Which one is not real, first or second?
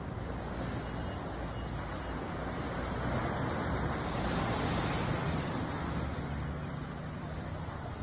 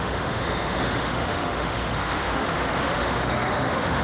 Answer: second